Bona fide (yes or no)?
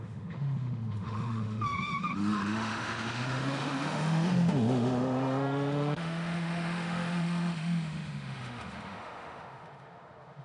no